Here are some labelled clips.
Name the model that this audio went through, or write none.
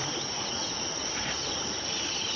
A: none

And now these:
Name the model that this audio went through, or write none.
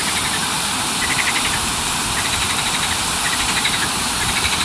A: vocoder, BigVGAN v2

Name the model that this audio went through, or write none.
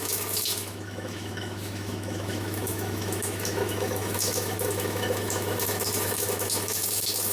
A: autoencoder, DAC-VAE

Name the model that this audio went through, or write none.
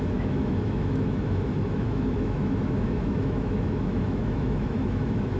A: autoencoder, DAC-VAE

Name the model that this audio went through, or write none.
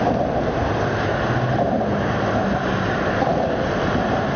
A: none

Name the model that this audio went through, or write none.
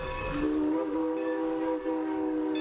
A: codec, DAC